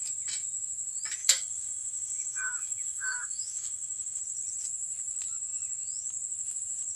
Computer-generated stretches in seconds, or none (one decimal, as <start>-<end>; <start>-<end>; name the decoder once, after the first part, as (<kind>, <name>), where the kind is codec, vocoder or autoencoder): 1.2-4.2 (autoencoder, DAC-VAE)